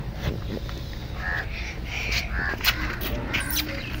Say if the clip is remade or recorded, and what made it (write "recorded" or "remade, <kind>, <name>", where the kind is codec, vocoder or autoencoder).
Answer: recorded